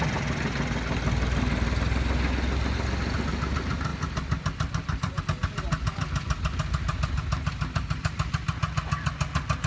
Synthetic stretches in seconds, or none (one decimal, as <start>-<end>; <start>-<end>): 3.9-5.2